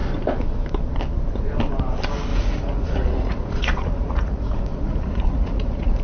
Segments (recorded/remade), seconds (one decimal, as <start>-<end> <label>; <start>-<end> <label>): 0.0-2.3 recorded; 2.3-6.0 remade